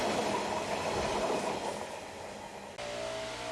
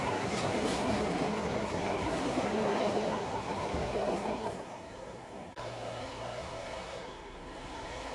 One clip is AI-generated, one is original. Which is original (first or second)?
first